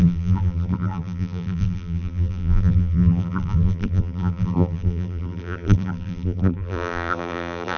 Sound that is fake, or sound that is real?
fake